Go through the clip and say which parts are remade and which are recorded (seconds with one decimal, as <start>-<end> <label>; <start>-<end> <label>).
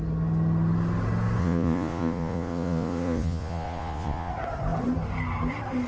0.0-1.4 recorded; 1.4-4.3 remade; 4.3-5.9 recorded